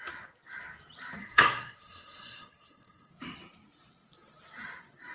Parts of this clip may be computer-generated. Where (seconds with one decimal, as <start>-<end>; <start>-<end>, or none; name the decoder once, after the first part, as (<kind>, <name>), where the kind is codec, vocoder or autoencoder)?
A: 1.2-3.1 (codec, SNAC)